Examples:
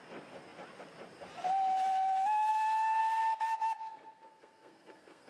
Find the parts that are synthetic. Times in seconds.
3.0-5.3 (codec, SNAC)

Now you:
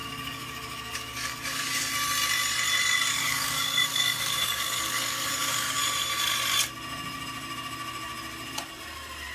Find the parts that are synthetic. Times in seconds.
0.0-1.9 (codec, DAC); 3.1-5.8

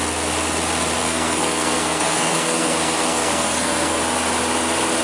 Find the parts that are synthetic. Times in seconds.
1.0-4.0 (codec, SNAC)

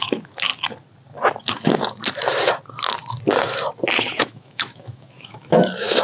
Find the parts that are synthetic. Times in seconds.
0.0-0.5 (autoencoder, DAC-VAE); 4.1-6.0

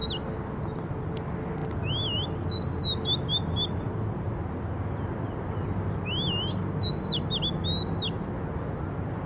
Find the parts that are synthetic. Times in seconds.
none

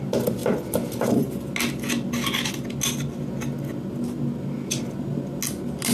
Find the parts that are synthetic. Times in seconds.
none

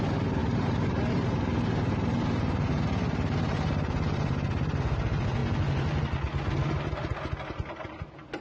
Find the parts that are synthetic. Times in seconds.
0.4-4.8 (vocoder, BigVGAN v2)

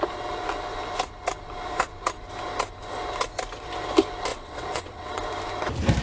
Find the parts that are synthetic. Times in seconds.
4.3-5.2 (vocoder, WaveNeXt)